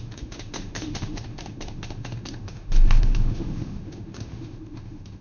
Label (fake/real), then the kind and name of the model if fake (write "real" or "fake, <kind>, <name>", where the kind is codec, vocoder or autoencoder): fake, autoencoder, DAC-VAE